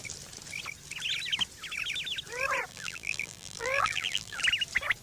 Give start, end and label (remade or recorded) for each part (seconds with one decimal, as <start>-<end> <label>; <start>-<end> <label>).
0.0-2.7 recorded; 2.7-4.4 remade; 4.4-5.0 recorded

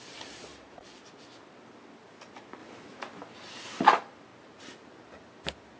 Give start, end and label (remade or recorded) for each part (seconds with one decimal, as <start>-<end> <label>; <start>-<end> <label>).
0.0-0.5 recorded; 0.5-1.0 remade; 1.0-4.3 recorded; 4.3-4.9 remade; 4.9-5.8 recorded

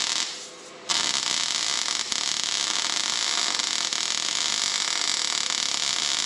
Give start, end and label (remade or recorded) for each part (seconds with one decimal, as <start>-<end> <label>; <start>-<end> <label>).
0.0-6.3 recorded

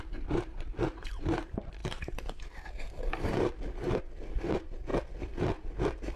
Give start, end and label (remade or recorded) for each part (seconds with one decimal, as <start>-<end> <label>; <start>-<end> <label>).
0.0-4.9 remade; 4.9-6.2 recorded

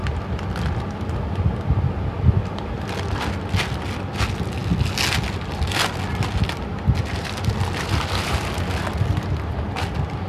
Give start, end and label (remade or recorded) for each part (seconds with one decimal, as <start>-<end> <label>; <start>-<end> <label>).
0.0-2.7 remade; 2.7-6.7 recorded; 6.7-8.3 remade; 8.3-10.3 recorded